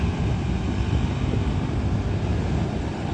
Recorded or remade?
recorded